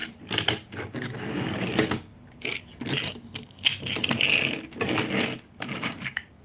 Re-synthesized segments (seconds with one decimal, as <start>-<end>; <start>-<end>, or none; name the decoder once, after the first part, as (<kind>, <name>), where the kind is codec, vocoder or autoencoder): 0.7-2.1 (codec, DAC); 5.8-6.4